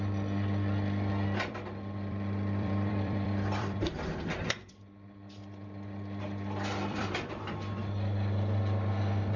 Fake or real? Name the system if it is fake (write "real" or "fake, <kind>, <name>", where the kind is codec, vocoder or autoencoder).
fake, vocoder, BigVGAN v2